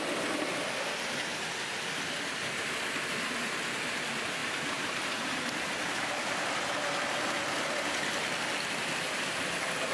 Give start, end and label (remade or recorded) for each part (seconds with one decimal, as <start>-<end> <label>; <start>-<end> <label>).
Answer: 0.0-4.4 recorded; 4.4-5.3 remade; 5.3-9.9 recorded